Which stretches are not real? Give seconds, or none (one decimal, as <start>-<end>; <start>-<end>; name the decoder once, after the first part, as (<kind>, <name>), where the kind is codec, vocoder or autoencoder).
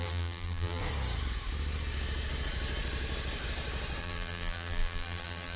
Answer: 0.0-0.8 (vocoder, BigVGAN v2); 4.0-5.6